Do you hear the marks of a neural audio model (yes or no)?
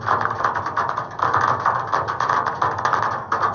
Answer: no